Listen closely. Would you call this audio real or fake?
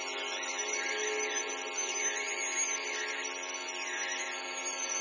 real